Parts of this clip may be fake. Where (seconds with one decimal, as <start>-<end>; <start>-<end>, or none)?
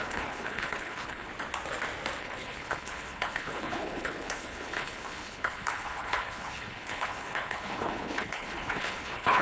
0.0-1.3; 2.2-9.4